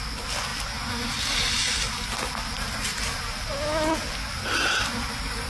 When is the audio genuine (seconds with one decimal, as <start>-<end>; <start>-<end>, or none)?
0.0-5.5